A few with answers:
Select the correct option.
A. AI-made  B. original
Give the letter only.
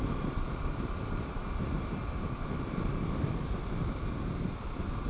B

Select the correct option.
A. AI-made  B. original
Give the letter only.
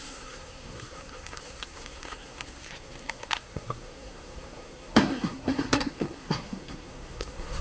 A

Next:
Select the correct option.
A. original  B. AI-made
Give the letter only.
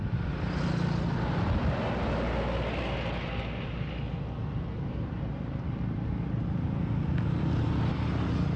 A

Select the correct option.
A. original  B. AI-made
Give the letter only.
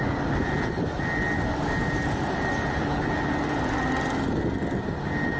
A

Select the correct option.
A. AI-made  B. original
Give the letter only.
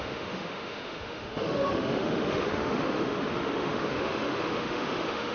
A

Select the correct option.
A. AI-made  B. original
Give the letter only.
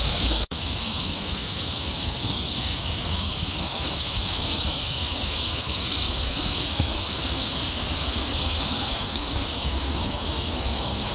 A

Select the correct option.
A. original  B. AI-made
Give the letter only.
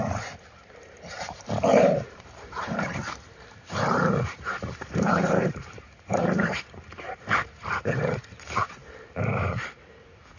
B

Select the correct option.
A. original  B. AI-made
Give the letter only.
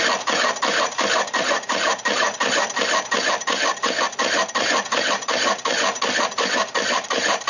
A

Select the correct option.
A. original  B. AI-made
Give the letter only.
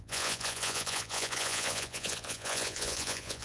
B